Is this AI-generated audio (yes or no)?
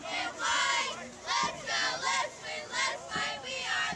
no